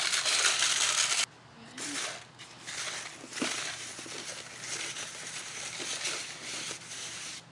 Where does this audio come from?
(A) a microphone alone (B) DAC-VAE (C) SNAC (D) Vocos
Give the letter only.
A